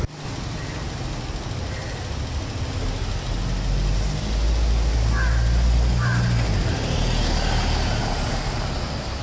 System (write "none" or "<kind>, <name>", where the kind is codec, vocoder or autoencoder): none